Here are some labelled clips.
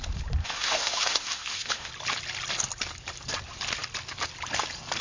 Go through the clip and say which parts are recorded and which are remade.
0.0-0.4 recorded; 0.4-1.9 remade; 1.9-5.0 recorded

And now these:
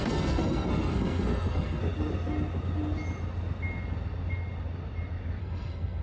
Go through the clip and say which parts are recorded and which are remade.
0.0-1.8 remade; 1.8-5.4 recorded; 5.4-6.0 remade

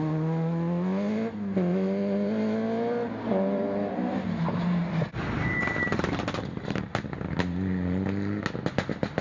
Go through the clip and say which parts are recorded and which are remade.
0.0-9.2 recorded

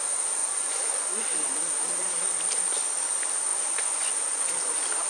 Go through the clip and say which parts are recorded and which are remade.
0.0-0.4 recorded; 0.4-1.1 remade; 1.1-3.5 recorded; 3.5-4.5 remade; 4.5-5.1 recorded

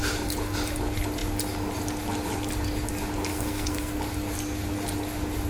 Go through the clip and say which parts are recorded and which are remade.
0.0-3.3 recorded; 3.3-3.9 remade; 3.9-5.5 recorded

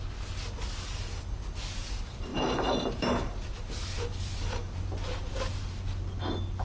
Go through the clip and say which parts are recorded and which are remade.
0.0-6.6 recorded

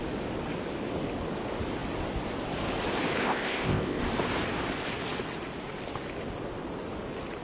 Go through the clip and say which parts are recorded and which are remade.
0.0-3.2 recorded; 3.2-4.0 remade; 4.0-7.4 recorded

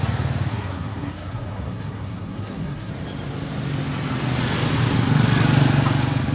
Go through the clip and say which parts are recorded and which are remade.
0.0-0.5 recorded; 0.5-2.9 remade; 2.9-6.3 recorded